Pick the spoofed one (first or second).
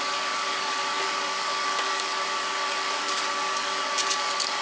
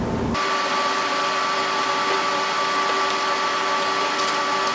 first